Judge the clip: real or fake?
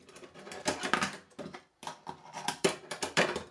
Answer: fake